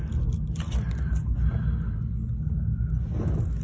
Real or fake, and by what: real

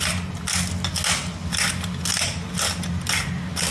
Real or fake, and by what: real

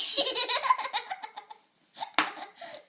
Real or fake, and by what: real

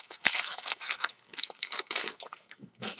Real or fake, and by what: fake, codec, SNAC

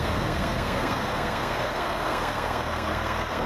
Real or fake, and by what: fake, codec, SNAC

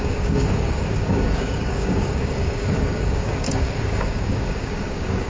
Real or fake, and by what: fake, codec, DAC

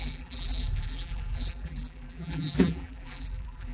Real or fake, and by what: fake, vocoder, BigVGAN v2